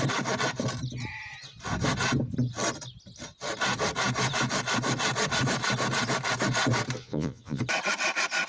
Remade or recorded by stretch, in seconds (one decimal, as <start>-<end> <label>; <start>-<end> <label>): 0.0-7.0 recorded; 7.0-7.6 remade; 7.6-8.5 recorded